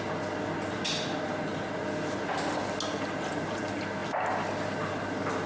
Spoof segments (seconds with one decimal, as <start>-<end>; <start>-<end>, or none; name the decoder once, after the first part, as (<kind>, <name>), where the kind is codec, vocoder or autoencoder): none